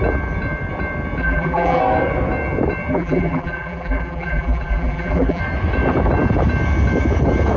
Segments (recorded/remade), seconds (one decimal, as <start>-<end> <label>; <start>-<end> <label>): 0.0-1.2 recorded; 1.2-1.8 remade; 1.8-2.9 recorded; 2.9-5.4 remade; 5.4-7.6 recorded